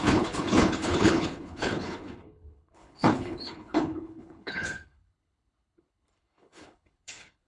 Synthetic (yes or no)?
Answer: yes